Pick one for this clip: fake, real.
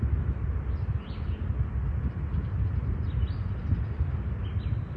real